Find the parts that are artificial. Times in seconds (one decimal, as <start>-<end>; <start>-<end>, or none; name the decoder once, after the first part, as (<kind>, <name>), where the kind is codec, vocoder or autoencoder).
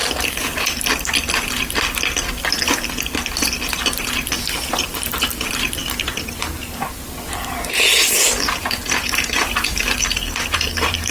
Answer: 4.9-11.1 (vocoder, BigVGAN v2)